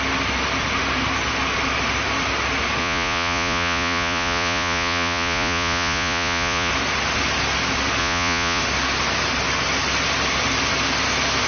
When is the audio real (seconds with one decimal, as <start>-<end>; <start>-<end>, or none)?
0.0-2.8; 6.7-8.0; 8.6-11.5